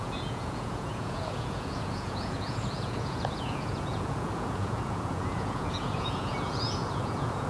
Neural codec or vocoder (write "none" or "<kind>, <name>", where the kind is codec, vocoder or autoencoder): vocoder, Vocos